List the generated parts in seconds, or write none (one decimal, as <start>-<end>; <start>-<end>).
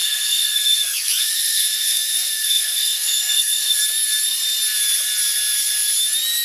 0.0-3.8